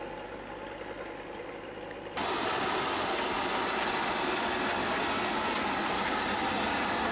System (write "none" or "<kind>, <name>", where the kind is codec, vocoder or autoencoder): none